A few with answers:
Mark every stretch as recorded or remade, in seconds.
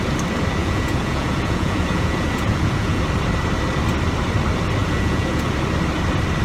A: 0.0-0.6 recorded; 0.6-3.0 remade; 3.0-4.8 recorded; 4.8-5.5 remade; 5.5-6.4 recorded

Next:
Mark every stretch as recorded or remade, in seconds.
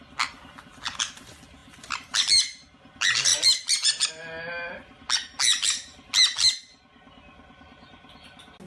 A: 0.0-8.7 recorded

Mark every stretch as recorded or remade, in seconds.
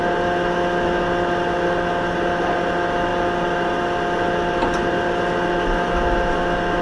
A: 0.0-6.8 recorded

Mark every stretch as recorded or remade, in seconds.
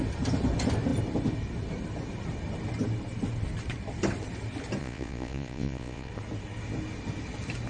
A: 0.0-4.8 recorded; 4.8-6.1 remade; 6.1-7.7 recorded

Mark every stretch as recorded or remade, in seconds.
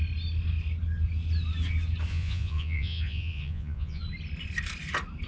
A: 0.0-2.1 recorded; 2.1-4.0 remade; 4.0-5.3 recorded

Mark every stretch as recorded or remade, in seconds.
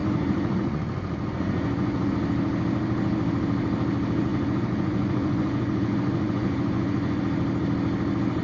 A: 0.0-2.1 remade; 2.1-4.3 recorded; 4.3-7.2 remade; 7.2-8.4 recorded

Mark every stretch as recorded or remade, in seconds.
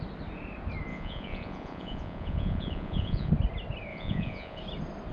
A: 0.0-0.9 recorded; 0.9-3.3 remade; 3.3-3.9 recorded; 3.9-4.6 remade; 4.6-5.1 recorded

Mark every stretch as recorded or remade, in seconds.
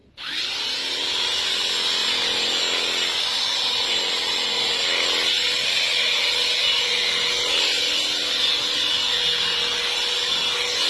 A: 0.0-10.9 recorded